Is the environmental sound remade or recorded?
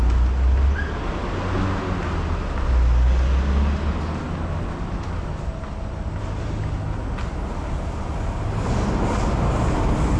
recorded